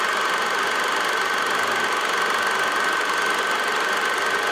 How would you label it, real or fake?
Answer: real